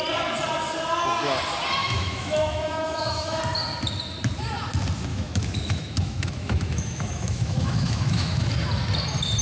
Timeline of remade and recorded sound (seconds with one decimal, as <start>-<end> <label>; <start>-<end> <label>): 0.0-1.8 recorded; 1.8-3.4 remade; 3.4-5.1 recorded; 5.1-8.5 remade; 8.5-9.4 recorded